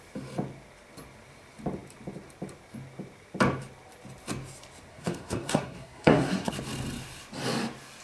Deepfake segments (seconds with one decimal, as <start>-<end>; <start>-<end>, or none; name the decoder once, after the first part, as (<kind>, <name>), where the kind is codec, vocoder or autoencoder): 4.9-6.5 (codec, SNAC)